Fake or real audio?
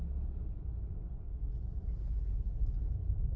real